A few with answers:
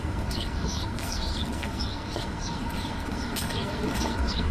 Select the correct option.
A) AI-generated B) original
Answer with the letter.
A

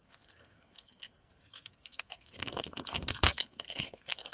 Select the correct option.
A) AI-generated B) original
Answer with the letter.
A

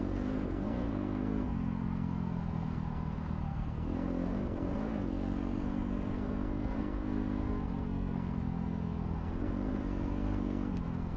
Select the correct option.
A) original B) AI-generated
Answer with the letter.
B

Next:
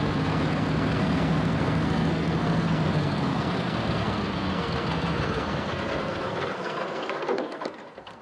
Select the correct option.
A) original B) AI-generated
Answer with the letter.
B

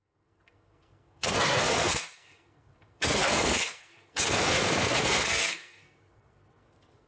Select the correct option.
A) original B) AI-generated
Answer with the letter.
B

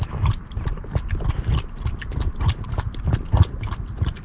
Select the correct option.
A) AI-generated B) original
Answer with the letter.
B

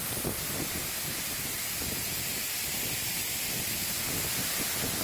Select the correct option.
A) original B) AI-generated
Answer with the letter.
A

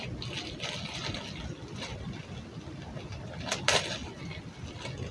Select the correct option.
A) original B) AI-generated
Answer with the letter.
A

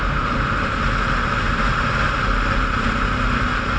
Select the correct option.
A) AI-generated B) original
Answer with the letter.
B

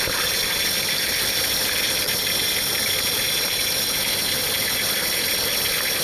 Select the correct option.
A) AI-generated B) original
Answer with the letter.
B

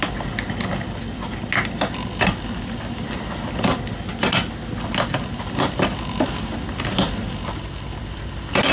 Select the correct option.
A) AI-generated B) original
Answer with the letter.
B